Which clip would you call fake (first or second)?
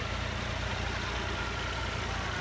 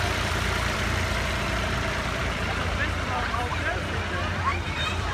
second